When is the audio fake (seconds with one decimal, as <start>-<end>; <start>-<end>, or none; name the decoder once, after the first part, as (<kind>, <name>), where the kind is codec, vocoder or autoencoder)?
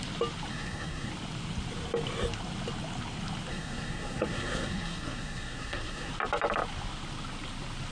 0.5-1.1 (codec, SNAC); 3.5-6.1